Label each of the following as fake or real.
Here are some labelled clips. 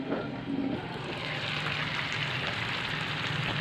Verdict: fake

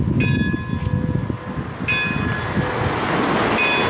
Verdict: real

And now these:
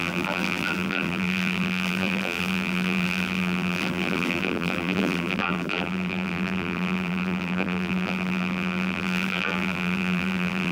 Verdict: fake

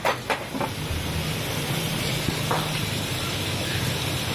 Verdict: real